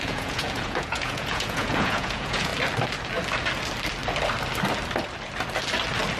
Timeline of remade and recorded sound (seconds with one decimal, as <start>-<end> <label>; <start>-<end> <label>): 0.0-2.5 remade; 2.5-6.2 recorded